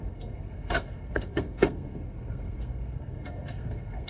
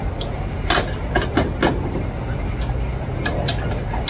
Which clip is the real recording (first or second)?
second